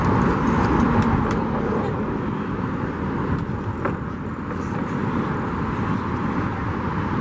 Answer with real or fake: real